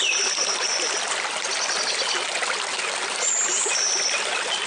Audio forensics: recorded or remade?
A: recorded